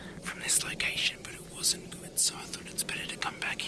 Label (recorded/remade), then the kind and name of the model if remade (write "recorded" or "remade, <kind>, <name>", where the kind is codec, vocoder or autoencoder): recorded